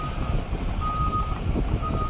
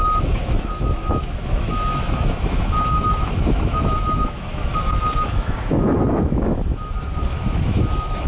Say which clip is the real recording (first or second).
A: first